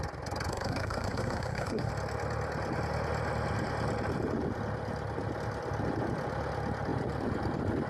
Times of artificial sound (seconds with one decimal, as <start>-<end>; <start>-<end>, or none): 0.5-1.9